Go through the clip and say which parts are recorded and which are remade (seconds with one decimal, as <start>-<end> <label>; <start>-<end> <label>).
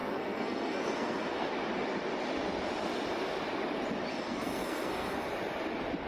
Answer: 0.0-1.5 remade; 1.5-4.1 recorded; 4.1-5.3 remade; 5.3-6.1 recorded